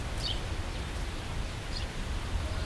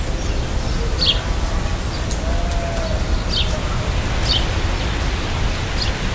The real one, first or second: second